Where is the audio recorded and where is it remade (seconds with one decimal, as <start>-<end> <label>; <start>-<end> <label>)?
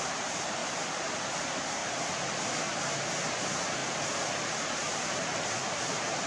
0.0-0.6 remade; 0.6-1.4 recorded; 1.4-1.8 remade; 1.8-3.4 recorded; 3.4-3.8 remade; 3.8-6.3 recorded